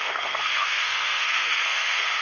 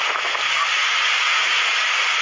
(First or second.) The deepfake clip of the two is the first